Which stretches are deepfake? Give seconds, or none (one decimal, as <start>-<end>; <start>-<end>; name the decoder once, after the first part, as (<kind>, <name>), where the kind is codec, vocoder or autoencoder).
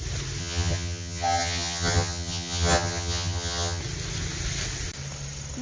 0.4-3.8 (vocoder, HiFi-GAN)